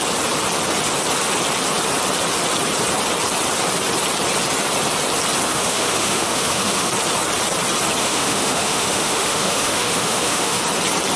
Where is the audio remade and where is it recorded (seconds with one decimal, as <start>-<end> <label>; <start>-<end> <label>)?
0.0-5.5 recorded; 5.5-6.9 remade; 6.9-8.0 recorded; 8.0-10.6 remade; 10.6-11.2 recorded